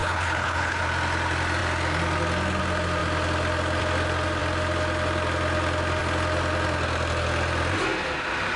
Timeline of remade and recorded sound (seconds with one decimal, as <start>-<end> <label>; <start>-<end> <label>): 0.0-0.8 remade; 0.8-8.6 recorded